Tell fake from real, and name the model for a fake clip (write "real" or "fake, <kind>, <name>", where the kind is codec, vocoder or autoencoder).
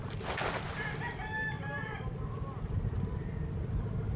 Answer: real